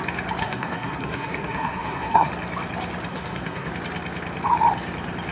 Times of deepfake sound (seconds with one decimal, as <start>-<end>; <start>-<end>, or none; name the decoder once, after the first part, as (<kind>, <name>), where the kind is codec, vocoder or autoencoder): 0.4-2.3 (codec, SNAC); 3.1-3.7